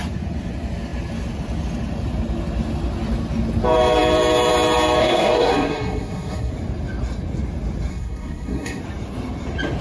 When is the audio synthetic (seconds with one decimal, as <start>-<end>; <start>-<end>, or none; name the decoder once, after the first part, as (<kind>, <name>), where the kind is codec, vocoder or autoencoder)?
5.0-6.5 (codec, SNAC); 7.9-8.8